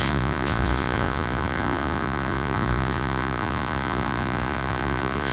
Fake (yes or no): yes